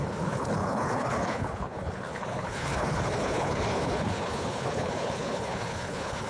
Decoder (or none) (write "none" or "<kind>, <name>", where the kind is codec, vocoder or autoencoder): codec, HILCodec